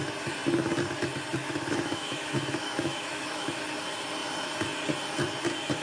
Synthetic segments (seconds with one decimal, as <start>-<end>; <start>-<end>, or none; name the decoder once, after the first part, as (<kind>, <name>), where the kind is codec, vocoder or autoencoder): 1.4-3.6 (autoencoder, DAC-VAE)